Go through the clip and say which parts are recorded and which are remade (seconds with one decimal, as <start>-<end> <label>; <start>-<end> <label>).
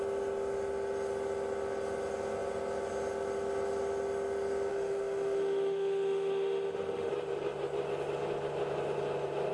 0.0-4.7 recorded; 4.7-7.1 remade; 7.1-9.5 recorded